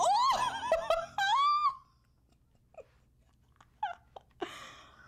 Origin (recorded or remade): recorded